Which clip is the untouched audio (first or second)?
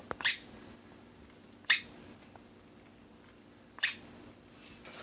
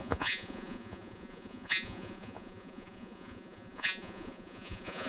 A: first